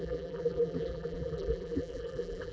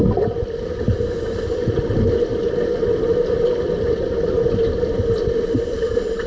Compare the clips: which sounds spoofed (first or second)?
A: first